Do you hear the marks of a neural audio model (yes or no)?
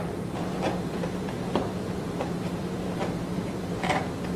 yes